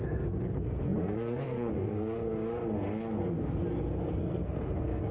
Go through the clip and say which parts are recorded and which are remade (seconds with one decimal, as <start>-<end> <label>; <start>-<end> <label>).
0.0-2.3 remade; 2.3-4.1 recorded; 4.1-5.1 remade